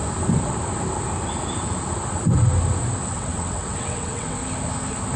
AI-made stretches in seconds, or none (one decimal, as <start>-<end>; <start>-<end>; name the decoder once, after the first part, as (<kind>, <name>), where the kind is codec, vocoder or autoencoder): 3.1-4.4 (vocoder, WaveNeXt)